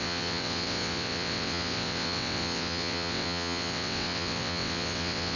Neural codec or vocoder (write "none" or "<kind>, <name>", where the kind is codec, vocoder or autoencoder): vocoder, WaveNeXt